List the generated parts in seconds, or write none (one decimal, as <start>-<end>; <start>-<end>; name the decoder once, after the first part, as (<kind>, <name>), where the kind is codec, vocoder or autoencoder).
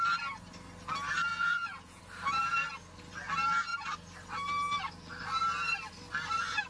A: 1.3-2.0 (vocoder, Vocos)